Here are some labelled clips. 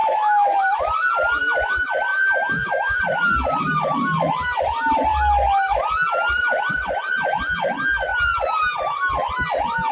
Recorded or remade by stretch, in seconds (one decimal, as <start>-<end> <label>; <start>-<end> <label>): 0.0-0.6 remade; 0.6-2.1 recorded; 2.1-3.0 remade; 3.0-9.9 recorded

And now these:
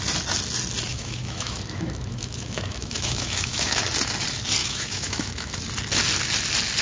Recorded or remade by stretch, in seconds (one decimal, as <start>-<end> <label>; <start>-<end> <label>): 0.0-0.9 recorded; 0.9-3.8 remade; 3.8-4.6 recorded; 4.6-5.6 remade; 5.6-6.8 recorded

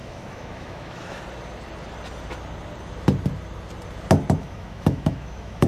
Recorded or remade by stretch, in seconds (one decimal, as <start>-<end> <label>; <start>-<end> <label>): 0.0-1.2 remade; 1.2-4.4 recorded; 4.4-5.7 remade